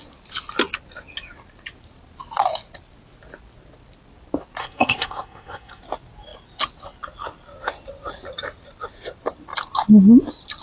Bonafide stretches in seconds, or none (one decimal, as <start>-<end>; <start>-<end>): 0.0-4.6; 5.8-10.6